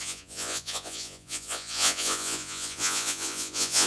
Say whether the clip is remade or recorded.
remade